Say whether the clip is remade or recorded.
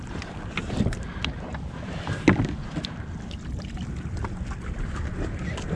recorded